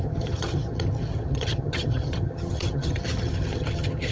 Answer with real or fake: fake